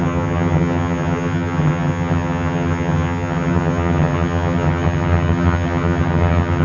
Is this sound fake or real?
fake